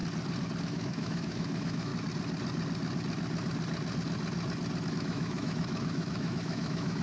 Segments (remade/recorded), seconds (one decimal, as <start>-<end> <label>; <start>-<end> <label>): 0.0-0.6 recorded; 0.6-1.9 remade; 1.9-4.9 recorded; 4.9-7.0 remade